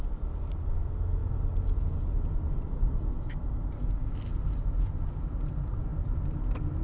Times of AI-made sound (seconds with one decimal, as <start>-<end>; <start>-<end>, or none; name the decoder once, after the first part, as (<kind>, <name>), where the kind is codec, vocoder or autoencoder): none